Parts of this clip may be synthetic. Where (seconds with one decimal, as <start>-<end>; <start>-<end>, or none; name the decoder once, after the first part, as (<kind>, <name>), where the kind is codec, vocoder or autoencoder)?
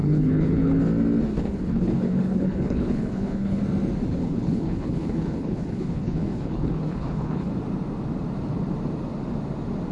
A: 0.0-0.8 (codec, HILCodec); 1.3-3.6; 4.1-7.5